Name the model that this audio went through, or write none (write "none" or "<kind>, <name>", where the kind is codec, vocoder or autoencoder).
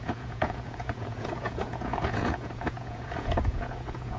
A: vocoder, Vocos